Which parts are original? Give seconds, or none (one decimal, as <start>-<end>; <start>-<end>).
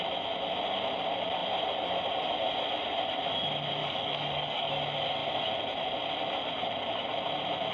0.0-3.8; 4.7-7.7